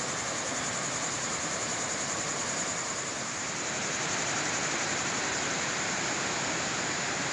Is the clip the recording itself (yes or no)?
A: no